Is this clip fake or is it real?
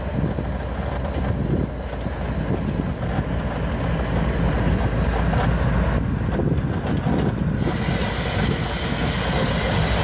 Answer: real